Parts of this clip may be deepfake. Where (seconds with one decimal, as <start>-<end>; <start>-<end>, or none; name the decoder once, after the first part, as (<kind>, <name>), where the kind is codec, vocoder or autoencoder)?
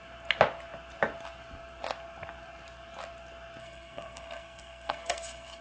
3.6-5.6 (codec, SNAC)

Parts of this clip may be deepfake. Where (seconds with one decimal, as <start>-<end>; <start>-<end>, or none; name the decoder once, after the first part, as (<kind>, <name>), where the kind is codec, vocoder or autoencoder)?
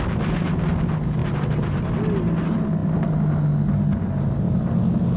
none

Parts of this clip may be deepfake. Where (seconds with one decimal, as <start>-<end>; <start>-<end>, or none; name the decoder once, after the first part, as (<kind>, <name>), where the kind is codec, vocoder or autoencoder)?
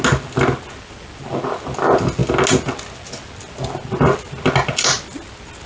none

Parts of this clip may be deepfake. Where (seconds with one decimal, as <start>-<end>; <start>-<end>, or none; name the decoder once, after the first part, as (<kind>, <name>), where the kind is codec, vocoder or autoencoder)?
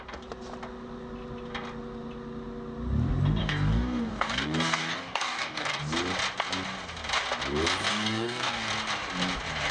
3.4-5.8 (codec, DAC); 7.9-8.7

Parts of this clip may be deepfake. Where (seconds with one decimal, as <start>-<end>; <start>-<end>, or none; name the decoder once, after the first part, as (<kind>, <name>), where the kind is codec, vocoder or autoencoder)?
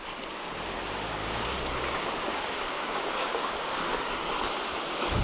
1.2-4.3 (codec, DAC)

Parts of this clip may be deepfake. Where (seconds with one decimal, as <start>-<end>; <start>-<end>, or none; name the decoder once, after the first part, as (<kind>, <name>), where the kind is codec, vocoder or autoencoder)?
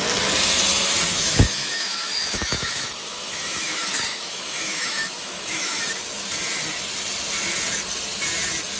1.1-5.8 (autoencoder, DAC-VAE)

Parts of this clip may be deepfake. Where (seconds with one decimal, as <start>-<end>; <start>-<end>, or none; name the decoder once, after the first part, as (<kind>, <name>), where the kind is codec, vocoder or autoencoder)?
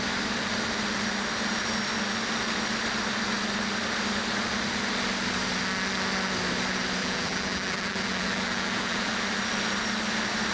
7.0-9.1 (vocoder, BigVGAN v2)